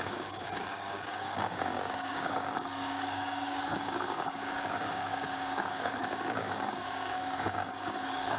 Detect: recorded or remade remade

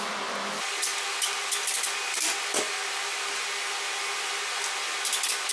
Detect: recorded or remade recorded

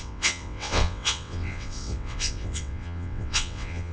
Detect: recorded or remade remade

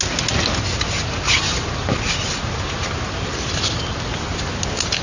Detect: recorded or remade recorded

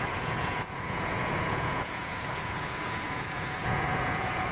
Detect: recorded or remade remade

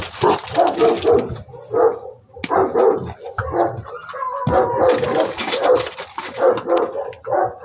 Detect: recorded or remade recorded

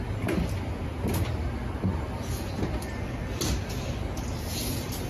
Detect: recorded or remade recorded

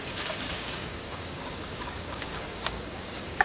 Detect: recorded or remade remade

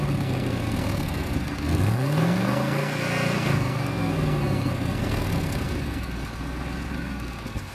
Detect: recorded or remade remade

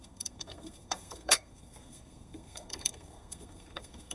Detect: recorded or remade remade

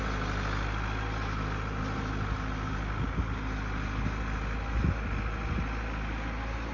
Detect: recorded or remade recorded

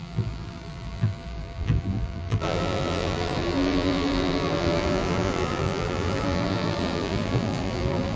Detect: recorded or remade remade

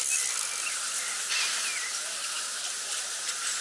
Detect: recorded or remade recorded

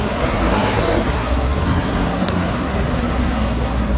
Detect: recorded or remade remade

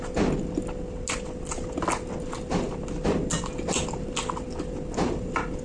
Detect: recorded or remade recorded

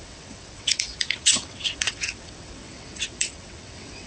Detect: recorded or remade remade